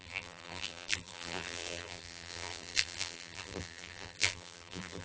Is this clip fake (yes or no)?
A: yes